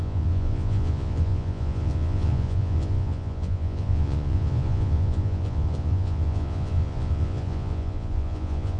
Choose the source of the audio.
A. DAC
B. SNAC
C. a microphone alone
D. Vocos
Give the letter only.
D